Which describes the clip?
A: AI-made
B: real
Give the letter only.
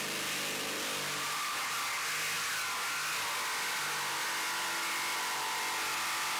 B